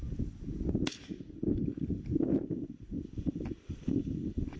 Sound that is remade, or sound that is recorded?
recorded